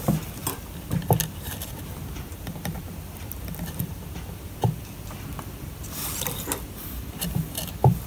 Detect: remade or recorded recorded